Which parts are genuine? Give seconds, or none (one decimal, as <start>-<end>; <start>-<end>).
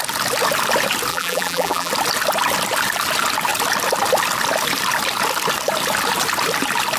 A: 0.0-1.1; 1.9-7.0